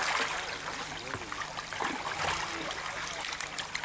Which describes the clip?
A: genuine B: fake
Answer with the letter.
A